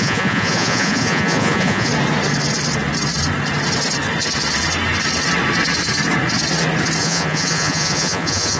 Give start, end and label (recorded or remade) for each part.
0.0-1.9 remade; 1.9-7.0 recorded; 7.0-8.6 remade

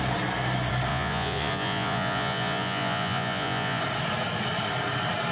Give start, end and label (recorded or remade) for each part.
0.0-0.9 recorded; 0.9-3.8 remade; 3.8-5.3 recorded

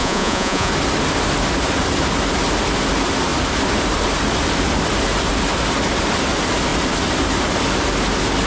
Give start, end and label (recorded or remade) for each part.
0.0-0.7 remade; 0.7-8.5 recorded

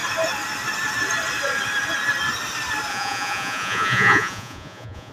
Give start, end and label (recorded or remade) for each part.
0.0-2.9 recorded; 2.9-5.1 remade

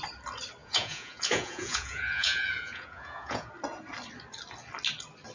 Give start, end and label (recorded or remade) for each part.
0.0-0.6 recorded; 0.6-3.5 remade; 3.5-5.3 recorded